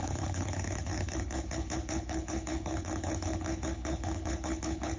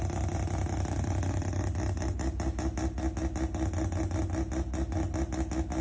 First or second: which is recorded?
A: second